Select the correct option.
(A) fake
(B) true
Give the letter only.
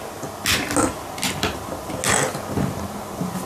B